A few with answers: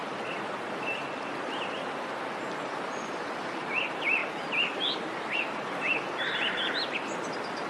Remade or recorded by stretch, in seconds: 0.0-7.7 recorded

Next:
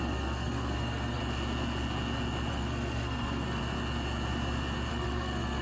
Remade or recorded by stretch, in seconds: 0.0-1.2 remade; 1.2-2.5 recorded; 2.5-3.6 remade; 3.6-4.9 recorded; 4.9-5.6 remade